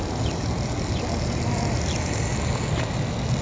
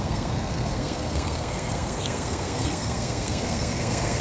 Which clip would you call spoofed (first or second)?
second